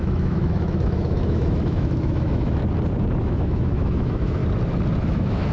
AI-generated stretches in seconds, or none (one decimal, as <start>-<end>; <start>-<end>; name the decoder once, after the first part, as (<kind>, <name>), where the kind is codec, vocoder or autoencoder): 0.0-2.6 (autoencoder, DAC-VAE); 3.2-4.4; 5.0-5.5